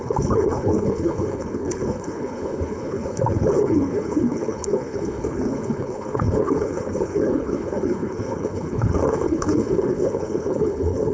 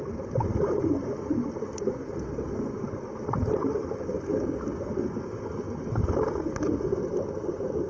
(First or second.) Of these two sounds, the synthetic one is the first